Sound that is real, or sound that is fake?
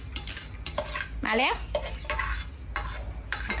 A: real